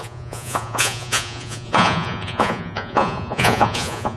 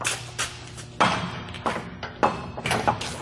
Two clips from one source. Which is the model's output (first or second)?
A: first